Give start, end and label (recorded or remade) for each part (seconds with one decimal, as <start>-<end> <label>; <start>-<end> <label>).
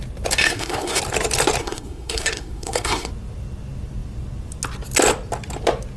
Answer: 0.0-0.4 recorded; 0.4-1.0 remade; 1.0-1.6 recorded; 1.6-3.1 remade; 3.1-6.0 recorded